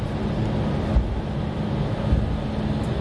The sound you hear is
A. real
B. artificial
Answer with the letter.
A